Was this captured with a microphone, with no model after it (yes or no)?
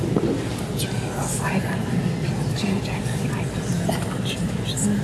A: yes